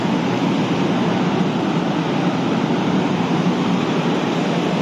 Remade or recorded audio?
recorded